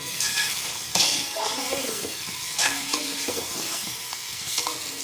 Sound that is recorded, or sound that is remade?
remade